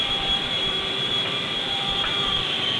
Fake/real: fake